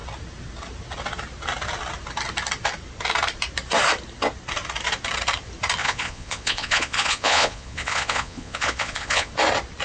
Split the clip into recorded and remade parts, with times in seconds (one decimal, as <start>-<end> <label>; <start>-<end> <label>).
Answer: 0.0-5.8 recorded; 5.8-9.3 remade; 9.3-9.8 recorded